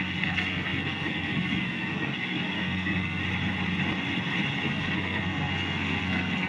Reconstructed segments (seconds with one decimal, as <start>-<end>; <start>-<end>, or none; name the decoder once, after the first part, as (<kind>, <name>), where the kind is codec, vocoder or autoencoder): 0.0-3.2 (codec, SNAC); 4.7-6.5